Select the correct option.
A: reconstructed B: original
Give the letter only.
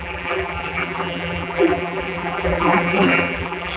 A